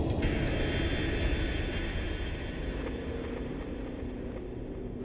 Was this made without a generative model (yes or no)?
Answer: yes